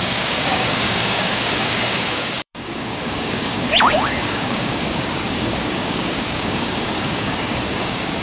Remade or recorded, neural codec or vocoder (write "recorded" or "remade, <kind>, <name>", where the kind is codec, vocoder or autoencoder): remade, codec, DAC